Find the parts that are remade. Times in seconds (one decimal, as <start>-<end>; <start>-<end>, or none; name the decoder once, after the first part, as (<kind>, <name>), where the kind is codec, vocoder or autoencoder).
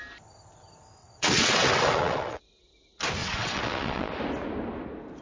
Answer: 1.0-2.4 (vocoder, WaveNeXt); 3.2-4.1